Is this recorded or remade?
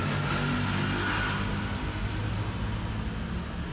recorded